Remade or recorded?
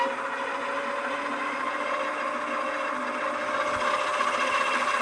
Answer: recorded